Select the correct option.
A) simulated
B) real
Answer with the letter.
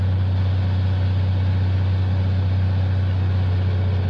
B